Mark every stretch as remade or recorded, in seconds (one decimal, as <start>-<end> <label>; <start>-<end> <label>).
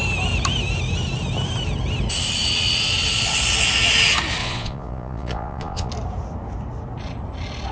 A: 0.0-4.4 recorded; 4.4-5.9 remade; 5.9-7.7 recorded